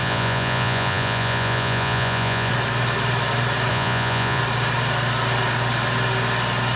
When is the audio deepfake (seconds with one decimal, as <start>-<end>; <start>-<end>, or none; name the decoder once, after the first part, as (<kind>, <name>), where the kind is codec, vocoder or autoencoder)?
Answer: 0.0-2.5 (vocoder, Vocos); 3.7-4.4